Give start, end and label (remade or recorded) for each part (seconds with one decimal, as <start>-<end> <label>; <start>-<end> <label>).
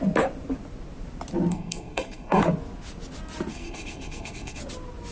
0.0-1.5 recorded; 1.5-2.4 remade; 2.4-3.5 recorded; 3.5-4.6 remade; 4.6-5.1 recorded